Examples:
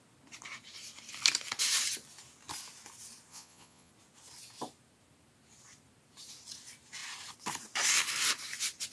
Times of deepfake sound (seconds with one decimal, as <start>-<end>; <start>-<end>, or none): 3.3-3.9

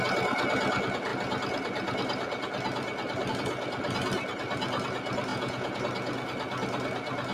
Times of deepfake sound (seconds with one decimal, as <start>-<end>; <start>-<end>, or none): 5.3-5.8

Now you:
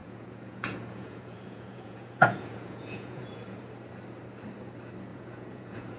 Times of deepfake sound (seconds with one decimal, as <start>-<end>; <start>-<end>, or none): 0.0-3.6; 5.1-6.0